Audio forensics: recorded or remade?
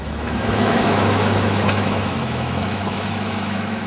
remade